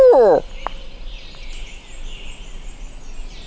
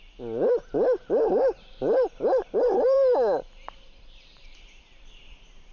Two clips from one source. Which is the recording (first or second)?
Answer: first